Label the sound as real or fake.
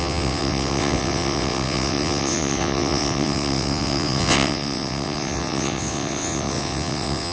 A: fake